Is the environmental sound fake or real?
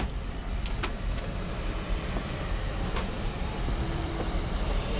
fake